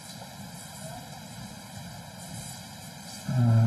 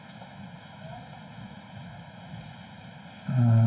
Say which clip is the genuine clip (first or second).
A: first